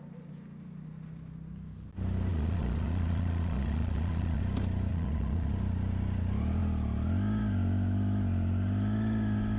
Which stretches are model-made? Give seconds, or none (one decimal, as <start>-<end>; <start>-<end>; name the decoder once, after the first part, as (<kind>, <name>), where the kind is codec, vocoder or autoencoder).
2.3-4.4 (vocoder, Vocos); 4.9-5.5